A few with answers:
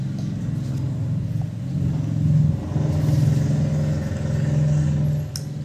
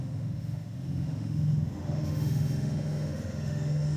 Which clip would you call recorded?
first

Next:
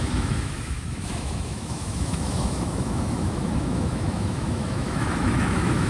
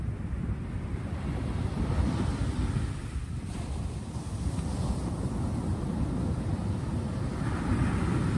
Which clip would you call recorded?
second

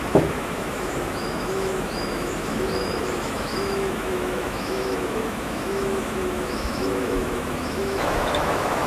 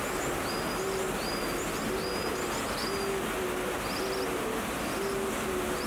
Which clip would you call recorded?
second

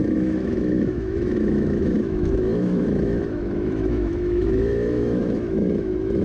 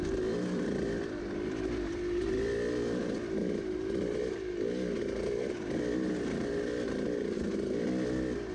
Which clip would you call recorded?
second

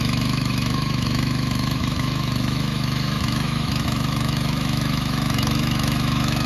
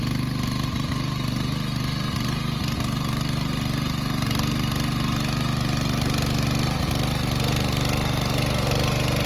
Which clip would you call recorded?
second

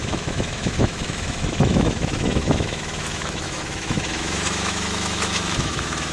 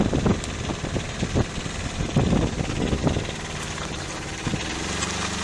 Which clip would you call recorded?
second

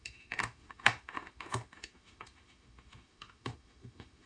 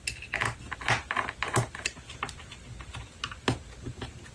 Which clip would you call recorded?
second